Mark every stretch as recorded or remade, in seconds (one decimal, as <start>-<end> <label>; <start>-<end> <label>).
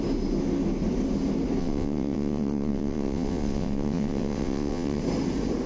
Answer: 0.0-1.6 recorded; 1.6-5.0 remade; 5.0-5.7 recorded